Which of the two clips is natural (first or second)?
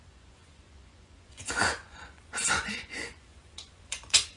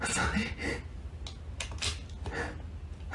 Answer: second